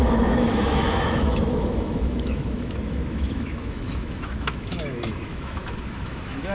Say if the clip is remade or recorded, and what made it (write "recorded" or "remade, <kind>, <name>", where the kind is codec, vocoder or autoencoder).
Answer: remade, autoencoder, DAC-VAE